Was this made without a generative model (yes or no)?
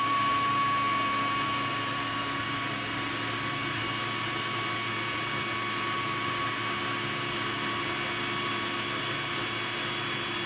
yes